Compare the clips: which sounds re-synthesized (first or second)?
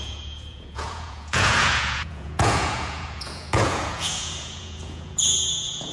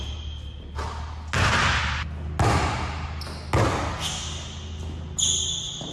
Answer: first